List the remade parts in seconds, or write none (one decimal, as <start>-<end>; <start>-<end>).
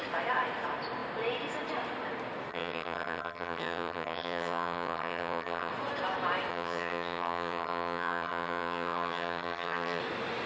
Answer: 2.5-5.7; 6.5-10.0